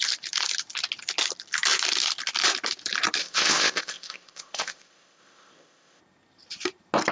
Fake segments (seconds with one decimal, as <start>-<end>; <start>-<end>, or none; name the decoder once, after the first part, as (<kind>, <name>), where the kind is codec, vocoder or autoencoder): 3.2-6.0 (codec, ZipCodec)